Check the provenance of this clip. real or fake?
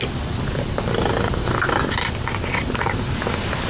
real